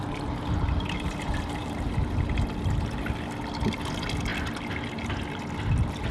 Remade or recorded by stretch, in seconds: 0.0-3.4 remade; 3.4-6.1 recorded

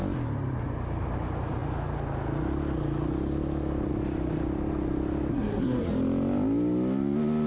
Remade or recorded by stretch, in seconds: 0.0-5.3 recorded; 5.3-5.9 remade; 5.9-7.5 recorded